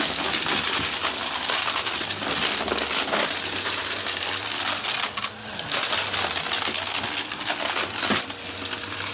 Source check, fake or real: real